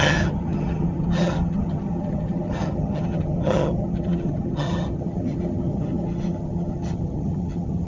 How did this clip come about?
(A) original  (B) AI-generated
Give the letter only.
B